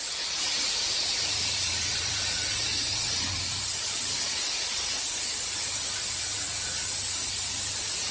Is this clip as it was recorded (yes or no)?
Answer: no